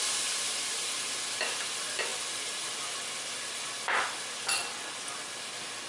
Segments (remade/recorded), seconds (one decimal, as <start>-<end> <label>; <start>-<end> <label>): 0.0-5.9 recorded